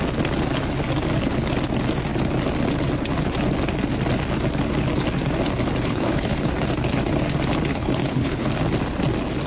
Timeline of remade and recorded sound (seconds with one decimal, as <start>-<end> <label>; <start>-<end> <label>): 0.0-5.9 recorded; 5.9-6.5 remade; 6.5-7.7 recorded; 7.7-8.5 remade; 8.5-9.5 recorded